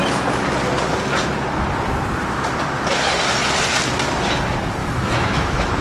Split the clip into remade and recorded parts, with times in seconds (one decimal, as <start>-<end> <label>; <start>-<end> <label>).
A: 0.0-4.8 recorded; 4.8-5.8 remade